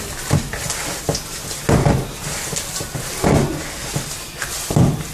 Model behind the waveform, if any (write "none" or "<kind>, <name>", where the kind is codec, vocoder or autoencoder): none